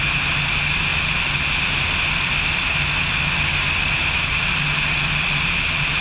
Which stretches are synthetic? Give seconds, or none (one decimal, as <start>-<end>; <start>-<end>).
none